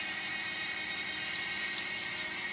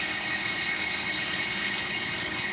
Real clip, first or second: first